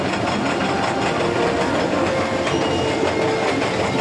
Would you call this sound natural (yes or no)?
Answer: yes